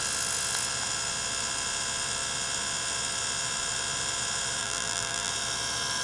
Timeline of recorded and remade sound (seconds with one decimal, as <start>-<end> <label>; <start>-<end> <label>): 0.0-4.6 recorded; 4.6-5.3 remade; 5.3-6.0 recorded